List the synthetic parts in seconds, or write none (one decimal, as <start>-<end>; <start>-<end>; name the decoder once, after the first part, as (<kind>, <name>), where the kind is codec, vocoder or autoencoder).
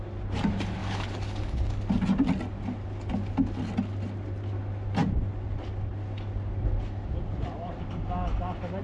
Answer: 0.8-1.9 (codec, DAC)